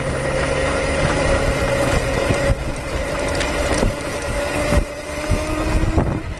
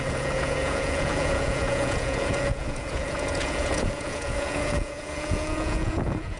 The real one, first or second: first